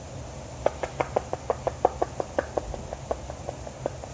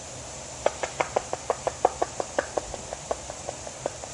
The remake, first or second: second